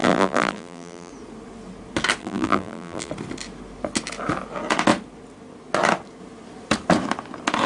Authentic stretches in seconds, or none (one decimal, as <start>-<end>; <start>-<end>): 1.1-2.2; 3.1-7.7